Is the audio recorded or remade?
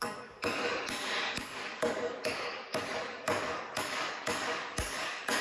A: remade